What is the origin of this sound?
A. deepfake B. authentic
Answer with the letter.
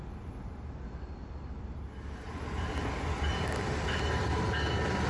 B